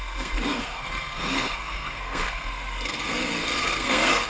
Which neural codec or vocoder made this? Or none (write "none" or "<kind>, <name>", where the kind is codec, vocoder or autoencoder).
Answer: codec, SNAC